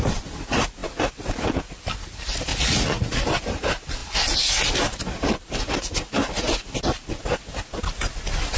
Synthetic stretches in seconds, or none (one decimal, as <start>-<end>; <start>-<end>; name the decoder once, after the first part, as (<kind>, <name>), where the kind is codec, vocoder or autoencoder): 2.5-3.2 (vocoder, Vocos)